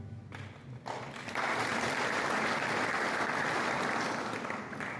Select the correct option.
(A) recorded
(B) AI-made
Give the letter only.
A